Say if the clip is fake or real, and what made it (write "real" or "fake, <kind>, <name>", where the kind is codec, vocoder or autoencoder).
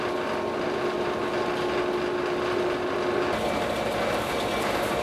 real